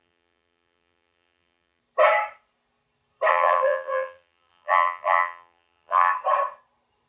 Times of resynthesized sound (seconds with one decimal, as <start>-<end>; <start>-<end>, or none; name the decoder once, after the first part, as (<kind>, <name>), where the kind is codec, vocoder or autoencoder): 0.0-1.8 (vocoder, BigVGAN v2); 3.3-6.1